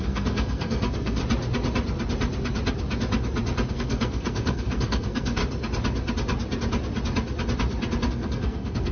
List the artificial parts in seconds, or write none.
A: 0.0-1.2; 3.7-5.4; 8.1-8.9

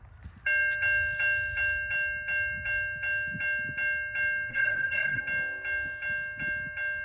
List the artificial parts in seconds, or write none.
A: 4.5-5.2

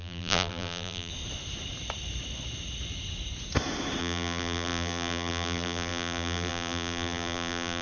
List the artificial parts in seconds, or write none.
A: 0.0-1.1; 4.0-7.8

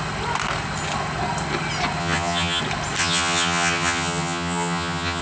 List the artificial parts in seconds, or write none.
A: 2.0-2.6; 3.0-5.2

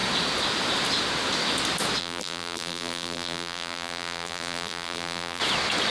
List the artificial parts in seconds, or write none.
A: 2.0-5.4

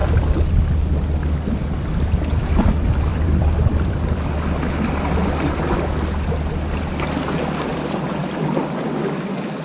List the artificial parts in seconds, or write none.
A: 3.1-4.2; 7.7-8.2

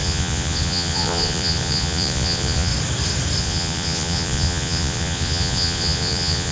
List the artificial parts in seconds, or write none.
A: 0.0-2.7; 3.4-6.5

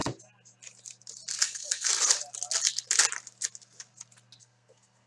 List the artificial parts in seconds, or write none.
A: 1.4-1.9; 4.4-5.1